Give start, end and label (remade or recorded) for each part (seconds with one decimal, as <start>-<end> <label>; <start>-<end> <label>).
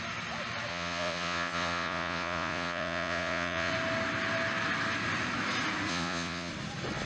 0.0-0.7 recorded; 0.7-3.7 remade; 3.7-5.9 recorded; 5.9-6.5 remade; 6.5-7.1 recorded